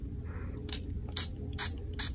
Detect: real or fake real